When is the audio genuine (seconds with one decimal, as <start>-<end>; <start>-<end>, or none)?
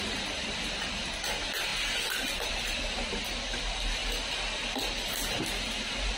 0.0-6.2